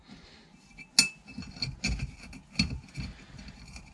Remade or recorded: recorded